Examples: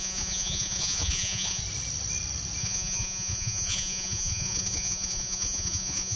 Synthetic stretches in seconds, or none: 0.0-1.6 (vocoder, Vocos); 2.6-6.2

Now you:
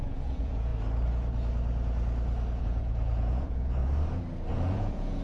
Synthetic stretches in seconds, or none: 0.0-0.7 (vocoder, Vocos); 2.6-3.8; 4.5-5.2

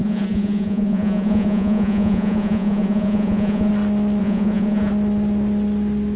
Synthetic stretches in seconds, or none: 0.0-3.7 (vocoder, Vocos); 4.2-4.9

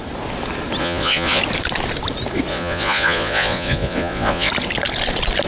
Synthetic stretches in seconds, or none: 0.8-1.4 (vocoder, Vocos); 2.5-4.5